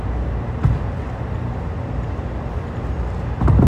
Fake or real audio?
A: real